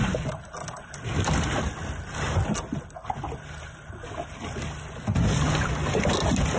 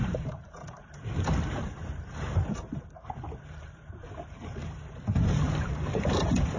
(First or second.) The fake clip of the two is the second